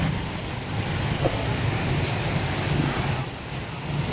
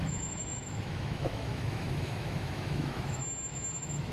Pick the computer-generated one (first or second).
second